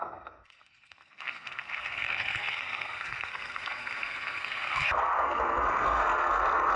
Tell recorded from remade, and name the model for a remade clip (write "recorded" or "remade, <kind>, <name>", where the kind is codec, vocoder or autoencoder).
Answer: remade, codec, SNAC